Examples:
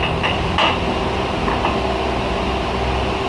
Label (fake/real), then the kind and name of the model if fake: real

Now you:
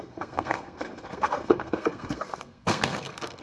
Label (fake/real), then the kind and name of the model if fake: fake, codec, SNAC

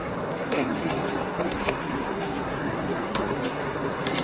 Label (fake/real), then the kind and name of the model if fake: fake, codec, SNAC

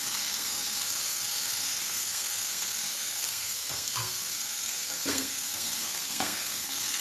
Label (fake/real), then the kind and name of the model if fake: fake, codec, SNAC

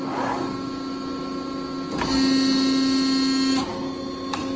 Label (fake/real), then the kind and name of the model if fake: real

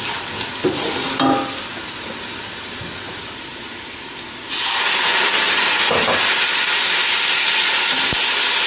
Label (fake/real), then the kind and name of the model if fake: real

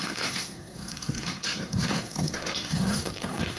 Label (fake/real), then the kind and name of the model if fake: fake, codec, SNAC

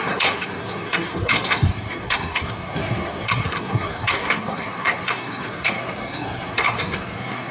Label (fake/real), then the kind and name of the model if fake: fake, codec, SNAC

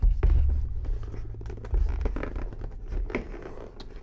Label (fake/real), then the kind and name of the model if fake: real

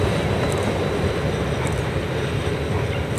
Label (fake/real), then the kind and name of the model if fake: real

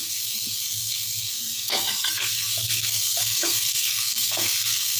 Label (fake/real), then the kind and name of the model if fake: fake, codec, SNAC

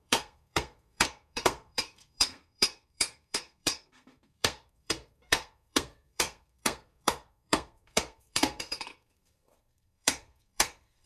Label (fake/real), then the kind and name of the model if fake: fake, codec, SNAC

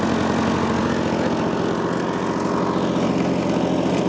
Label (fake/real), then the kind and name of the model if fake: real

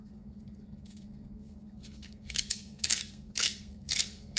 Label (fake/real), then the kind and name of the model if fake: fake, codec, SNAC